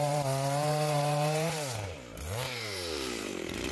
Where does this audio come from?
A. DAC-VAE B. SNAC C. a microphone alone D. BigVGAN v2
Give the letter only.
D